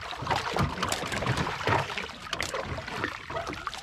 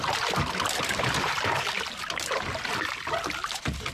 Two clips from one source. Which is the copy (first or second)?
first